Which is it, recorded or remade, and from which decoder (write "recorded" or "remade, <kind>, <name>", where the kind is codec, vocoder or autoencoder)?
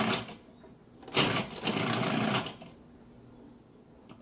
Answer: recorded